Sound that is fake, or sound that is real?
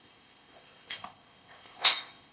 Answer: fake